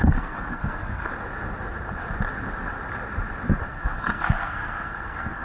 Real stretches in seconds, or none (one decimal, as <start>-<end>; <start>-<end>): 1.1-3.7